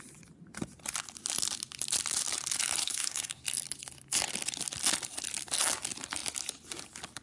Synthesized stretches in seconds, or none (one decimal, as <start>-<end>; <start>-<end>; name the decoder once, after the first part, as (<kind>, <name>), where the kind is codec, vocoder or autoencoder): 2.8-3.4 (codec, SNAC)